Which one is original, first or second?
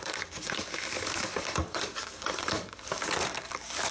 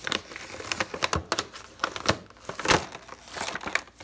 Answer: second